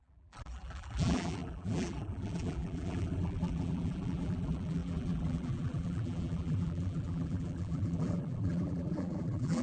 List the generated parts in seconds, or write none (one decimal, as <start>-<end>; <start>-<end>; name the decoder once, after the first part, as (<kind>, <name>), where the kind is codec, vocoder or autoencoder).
0.0-9.6 (vocoder, BigVGAN v2)